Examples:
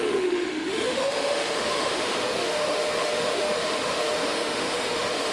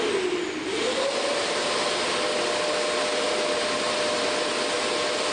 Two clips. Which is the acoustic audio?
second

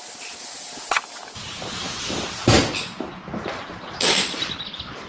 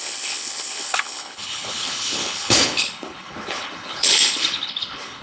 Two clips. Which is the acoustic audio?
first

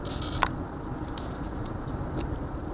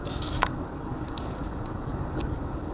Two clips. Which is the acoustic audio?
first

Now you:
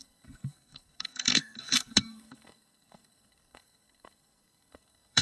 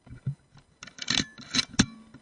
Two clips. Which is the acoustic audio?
second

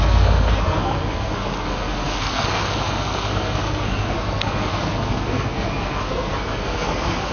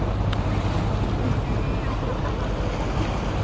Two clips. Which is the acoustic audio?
second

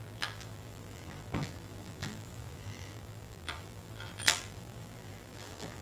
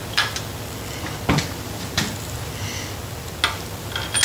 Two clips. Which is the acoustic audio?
second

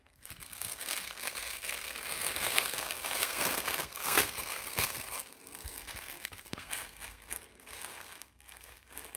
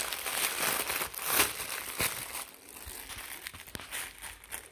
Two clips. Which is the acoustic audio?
second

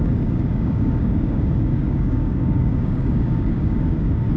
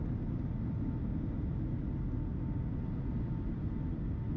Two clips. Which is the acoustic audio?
second